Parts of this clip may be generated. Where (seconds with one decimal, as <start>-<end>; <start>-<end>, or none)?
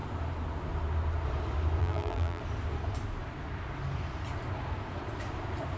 1.8-2.4